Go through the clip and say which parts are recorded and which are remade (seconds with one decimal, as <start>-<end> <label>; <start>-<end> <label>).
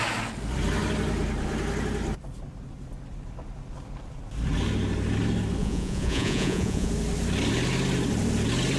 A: 0.0-5.6 recorded; 5.6-6.9 remade; 6.9-8.8 recorded